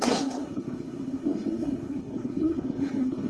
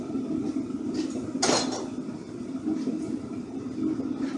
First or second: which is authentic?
second